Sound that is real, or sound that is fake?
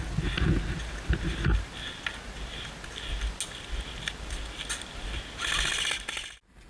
real